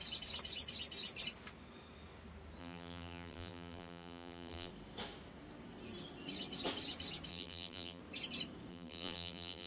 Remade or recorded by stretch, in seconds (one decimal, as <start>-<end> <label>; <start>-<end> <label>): 0.0-2.6 recorded; 2.6-4.7 remade; 4.7-7.3 recorded; 7.3-8.0 remade; 8.0-8.7 recorded; 8.7-9.7 remade